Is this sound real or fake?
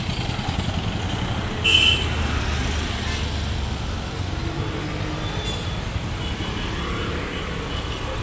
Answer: real